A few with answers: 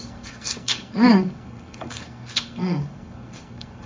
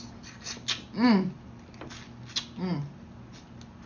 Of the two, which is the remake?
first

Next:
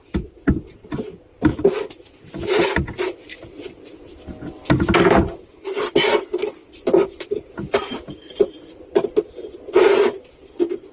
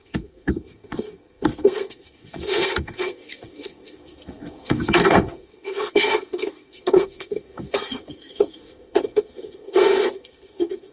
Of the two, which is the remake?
second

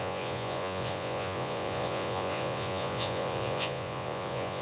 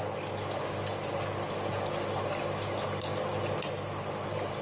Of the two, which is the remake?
first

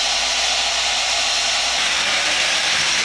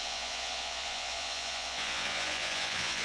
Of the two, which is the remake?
second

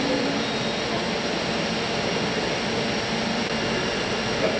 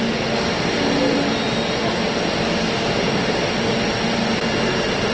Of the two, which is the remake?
first